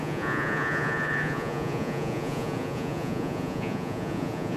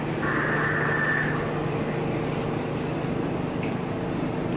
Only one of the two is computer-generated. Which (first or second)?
first